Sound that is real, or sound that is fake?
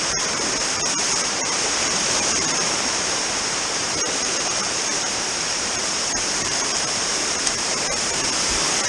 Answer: fake